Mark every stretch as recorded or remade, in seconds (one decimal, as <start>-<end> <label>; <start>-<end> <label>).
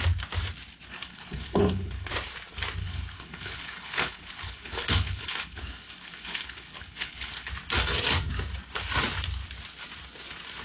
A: 0.0-1.0 recorded; 1.0-2.1 remade; 2.1-2.8 recorded; 2.8-7.5 remade; 7.5-10.6 recorded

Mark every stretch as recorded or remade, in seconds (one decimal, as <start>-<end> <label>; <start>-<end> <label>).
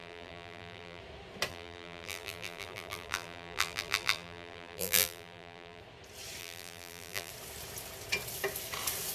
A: 0.0-1.0 remade; 1.0-1.5 recorded; 1.5-5.8 remade; 5.8-6.4 recorded; 6.4-7.3 remade; 7.3-9.1 recorded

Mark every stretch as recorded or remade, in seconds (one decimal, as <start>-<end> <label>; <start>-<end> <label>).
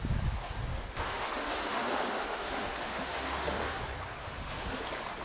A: 0.0-0.7 recorded; 0.7-3.8 remade; 3.8-4.2 recorded; 4.2-4.8 remade; 4.8-5.2 recorded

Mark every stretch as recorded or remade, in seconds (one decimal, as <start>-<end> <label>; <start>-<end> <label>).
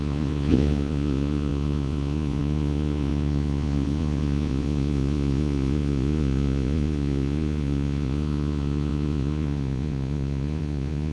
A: 0.0-11.1 remade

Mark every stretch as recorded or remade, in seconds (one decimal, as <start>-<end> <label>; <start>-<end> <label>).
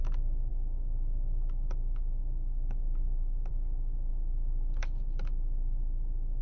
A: 0.0-0.5 recorded; 0.5-3.5 remade; 3.5-6.4 recorded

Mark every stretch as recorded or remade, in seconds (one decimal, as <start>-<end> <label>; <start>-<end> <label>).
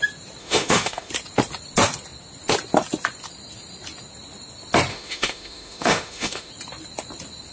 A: 0.0-0.4 recorded; 0.4-1.1 remade; 1.1-4.9 recorded; 4.9-6.5 remade; 6.5-7.5 recorded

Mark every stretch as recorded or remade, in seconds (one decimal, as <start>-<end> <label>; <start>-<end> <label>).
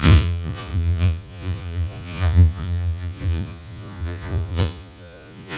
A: 0.0-5.6 remade